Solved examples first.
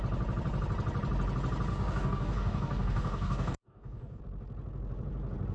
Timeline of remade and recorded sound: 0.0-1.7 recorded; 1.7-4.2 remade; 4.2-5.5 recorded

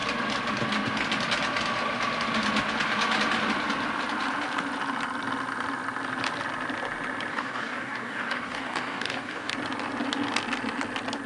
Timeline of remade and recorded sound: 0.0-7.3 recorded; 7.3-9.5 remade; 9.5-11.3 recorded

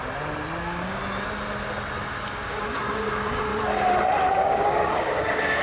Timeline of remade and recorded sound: 0.0-0.6 recorded; 0.6-1.0 remade; 1.0-2.3 recorded; 2.3-3.5 remade; 3.5-4.3 recorded; 4.3-5.6 remade

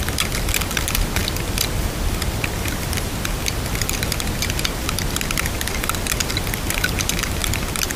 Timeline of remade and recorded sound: 0.0-8.0 recorded

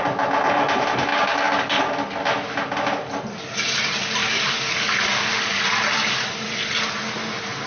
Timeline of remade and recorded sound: 0.0-1.1 recorded; 1.1-1.8 remade; 1.8-4.2 recorded; 4.2-5.6 remade; 5.6-7.7 recorded

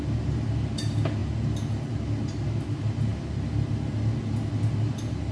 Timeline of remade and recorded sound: 0.0-5.3 recorded